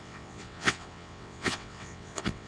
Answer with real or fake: fake